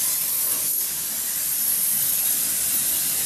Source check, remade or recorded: recorded